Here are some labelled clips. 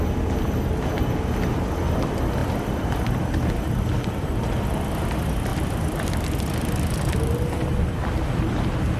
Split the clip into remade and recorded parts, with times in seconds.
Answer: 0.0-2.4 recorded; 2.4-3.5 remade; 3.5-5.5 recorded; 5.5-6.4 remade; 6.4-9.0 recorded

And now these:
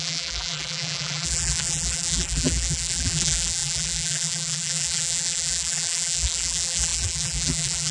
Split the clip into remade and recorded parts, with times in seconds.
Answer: 0.0-7.9 remade

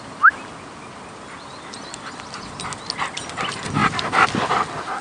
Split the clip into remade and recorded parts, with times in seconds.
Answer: 0.0-5.0 recorded

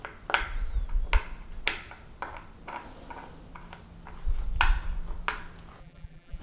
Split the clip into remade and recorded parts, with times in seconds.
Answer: 0.0-5.8 recorded; 5.8-6.4 remade